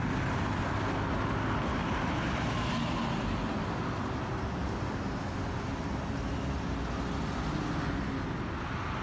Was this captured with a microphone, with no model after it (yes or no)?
yes